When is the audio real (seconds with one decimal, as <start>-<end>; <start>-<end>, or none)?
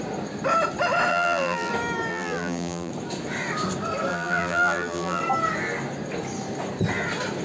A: 0.0-1.1; 1.7-2.1; 2.9-4.1; 5.2-7.4